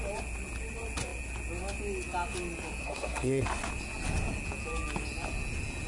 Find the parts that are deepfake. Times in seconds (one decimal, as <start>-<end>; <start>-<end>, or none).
2.8-3.4

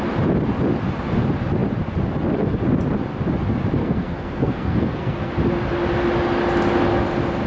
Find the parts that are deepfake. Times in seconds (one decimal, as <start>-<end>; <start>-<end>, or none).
3.8-5.3